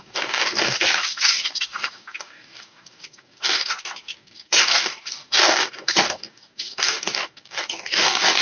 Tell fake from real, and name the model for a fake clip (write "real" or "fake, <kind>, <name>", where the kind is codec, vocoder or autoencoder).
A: fake, codec, DAC